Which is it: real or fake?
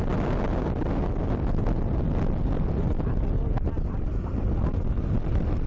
real